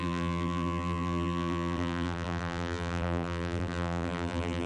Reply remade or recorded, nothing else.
remade